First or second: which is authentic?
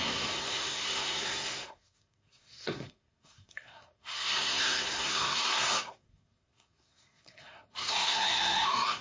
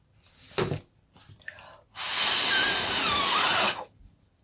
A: second